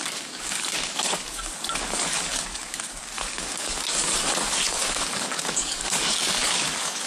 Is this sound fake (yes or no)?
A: yes